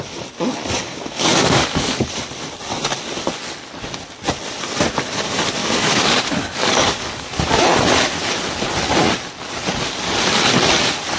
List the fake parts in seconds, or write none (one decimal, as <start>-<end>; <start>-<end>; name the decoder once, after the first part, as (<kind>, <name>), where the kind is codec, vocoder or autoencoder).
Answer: 0.8-2.1 (codec, DAC); 5.6-7.4